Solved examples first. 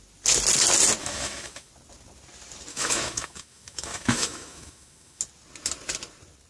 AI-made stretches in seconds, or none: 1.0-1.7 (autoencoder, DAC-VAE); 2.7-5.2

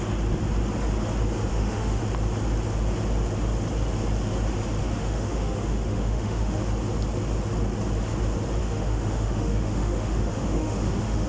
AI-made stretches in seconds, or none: 1.5-2.0 (autoencoder, DAC-VAE); 4.8-6.6; 8.6-11.3

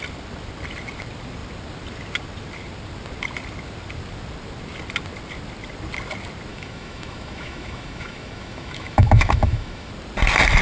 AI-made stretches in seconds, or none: 6.5-9.9 (autoencoder, DAC-VAE)